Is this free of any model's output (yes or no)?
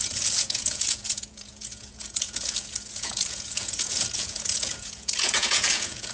no